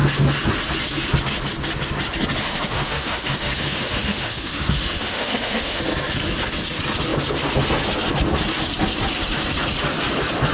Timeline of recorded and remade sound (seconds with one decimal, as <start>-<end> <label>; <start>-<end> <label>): 0.0-2.4 recorded; 2.4-5.8 remade; 5.8-10.5 recorded